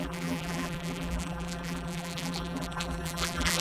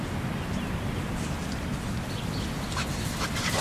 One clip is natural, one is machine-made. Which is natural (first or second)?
second